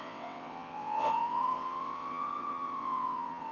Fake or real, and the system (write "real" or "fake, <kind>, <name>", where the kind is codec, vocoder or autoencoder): fake, vocoder, WaveNeXt